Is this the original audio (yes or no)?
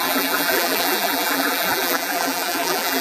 no